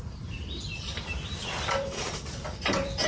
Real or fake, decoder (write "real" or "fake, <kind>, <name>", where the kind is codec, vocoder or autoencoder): fake, vocoder, BigVGAN v2